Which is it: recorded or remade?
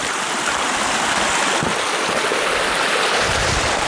recorded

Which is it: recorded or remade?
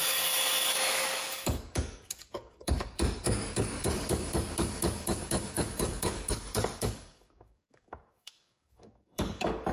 remade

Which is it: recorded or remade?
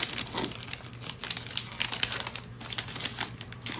recorded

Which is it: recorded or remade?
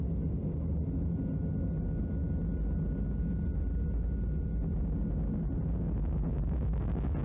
recorded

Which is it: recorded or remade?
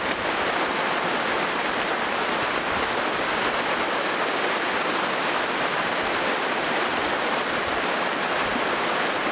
recorded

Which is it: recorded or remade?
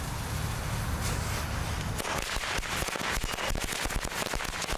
recorded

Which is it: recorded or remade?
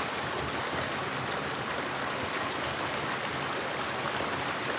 recorded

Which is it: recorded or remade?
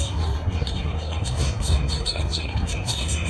remade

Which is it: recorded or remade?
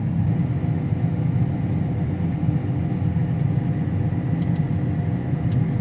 recorded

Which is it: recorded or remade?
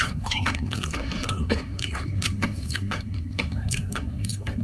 remade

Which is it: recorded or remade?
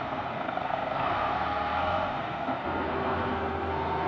remade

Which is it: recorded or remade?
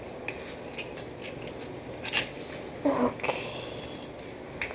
recorded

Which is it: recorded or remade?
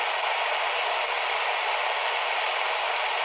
recorded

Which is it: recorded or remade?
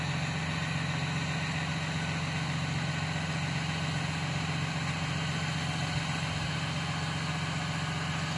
recorded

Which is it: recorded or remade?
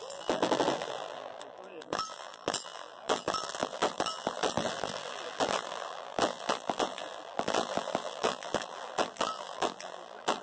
remade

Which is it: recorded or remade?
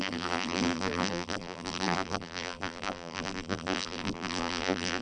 remade